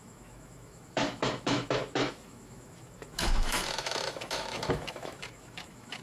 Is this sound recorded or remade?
remade